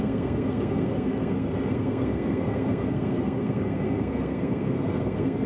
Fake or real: fake